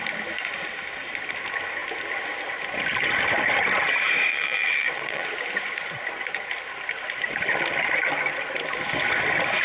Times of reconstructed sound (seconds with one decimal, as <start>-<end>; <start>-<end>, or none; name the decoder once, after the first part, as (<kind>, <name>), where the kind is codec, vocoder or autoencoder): 4.3-5.3 (vocoder, WaveNeXt)

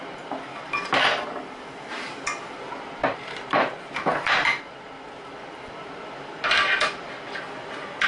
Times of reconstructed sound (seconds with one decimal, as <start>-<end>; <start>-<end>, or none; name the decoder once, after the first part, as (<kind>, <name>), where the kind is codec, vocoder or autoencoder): 3.0-4.6 (vocoder, BigVGAN v2)

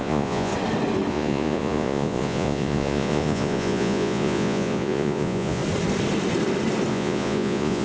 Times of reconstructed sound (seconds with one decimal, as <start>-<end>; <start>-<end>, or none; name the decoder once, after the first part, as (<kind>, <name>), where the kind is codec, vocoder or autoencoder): 0.0-0.5 (vocoder, Vocos); 1.1-5.6; 6.9-7.8

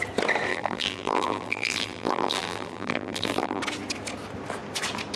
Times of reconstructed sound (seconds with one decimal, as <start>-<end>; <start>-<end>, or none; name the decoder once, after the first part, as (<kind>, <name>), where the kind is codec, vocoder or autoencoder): 0.5-3.6 (vocoder, BigVGAN v2)

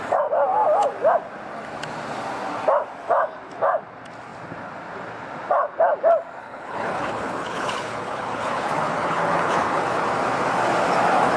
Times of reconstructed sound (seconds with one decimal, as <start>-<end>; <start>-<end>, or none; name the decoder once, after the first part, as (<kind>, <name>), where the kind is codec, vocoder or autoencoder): 6.4-10.1 (codec, HILCodec)

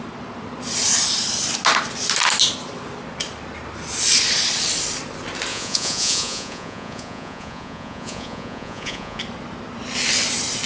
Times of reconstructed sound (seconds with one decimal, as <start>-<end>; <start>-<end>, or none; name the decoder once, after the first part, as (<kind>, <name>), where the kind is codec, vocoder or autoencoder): 5.5-9.2 (vocoder, Vocos)

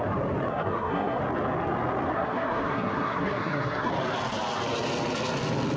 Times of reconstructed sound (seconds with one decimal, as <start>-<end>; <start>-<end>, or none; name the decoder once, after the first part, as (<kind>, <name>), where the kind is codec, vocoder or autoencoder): 0.5-1.2 (codec, SNAC); 2.1-3.9

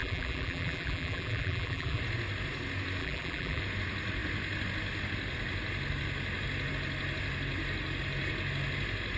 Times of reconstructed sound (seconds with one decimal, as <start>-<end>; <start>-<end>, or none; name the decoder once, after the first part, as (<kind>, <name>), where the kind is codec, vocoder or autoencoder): 0.0-2.0 (vocoder, BigVGAN v2); 3.0-3.6